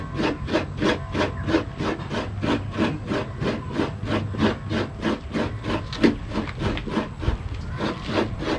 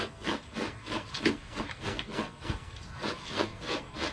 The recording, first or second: first